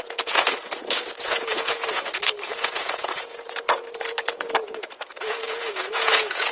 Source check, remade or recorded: remade